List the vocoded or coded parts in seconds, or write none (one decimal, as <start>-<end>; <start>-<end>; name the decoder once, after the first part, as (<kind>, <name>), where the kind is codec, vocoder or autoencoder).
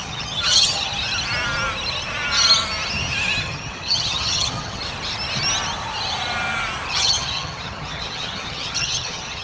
0.0-0.9 (vocoder, HiFi-GAN); 3.4-4.8; 6.9-9.4